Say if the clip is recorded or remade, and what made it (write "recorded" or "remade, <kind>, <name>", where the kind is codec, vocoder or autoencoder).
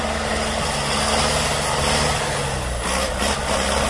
recorded